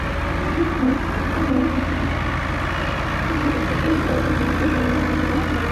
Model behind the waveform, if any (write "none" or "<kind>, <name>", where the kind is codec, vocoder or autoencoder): none